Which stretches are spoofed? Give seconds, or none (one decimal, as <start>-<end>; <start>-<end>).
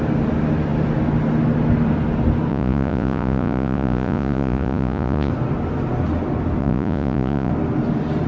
2.5-5.3; 6.6-7.5